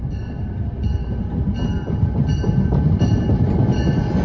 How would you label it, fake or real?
real